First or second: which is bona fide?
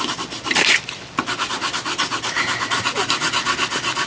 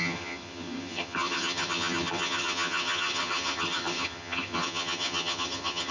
first